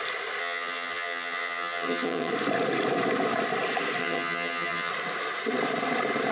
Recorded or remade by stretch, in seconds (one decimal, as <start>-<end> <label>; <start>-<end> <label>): 0.0-0.4 recorded; 0.4-2.3 remade; 2.3-4.0 recorded; 4.0-4.9 remade; 4.9-6.3 recorded